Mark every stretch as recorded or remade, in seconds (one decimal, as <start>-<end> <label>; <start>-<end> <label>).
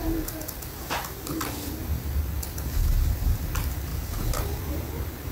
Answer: 0.0-5.3 recorded